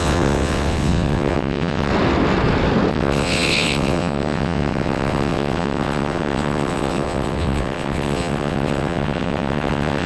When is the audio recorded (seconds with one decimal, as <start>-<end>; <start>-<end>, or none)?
1.9-2.9